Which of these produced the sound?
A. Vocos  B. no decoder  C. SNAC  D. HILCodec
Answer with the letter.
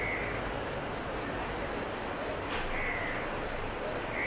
B